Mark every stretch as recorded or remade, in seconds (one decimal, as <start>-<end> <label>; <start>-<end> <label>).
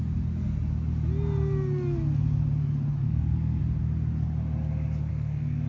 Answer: 0.0-3.0 recorded; 3.0-3.6 remade; 3.6-5.1 recorded; 5.1-5.7 remade